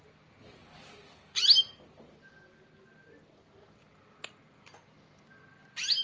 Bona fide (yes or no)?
yes